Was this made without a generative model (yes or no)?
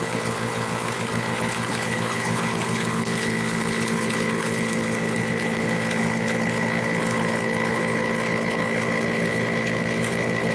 no